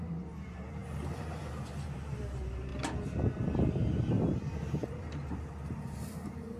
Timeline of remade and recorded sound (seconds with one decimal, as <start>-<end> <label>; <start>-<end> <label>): 0.0-2.7 remade; 2.7-3.7 recorded; 3.7-6.6 remade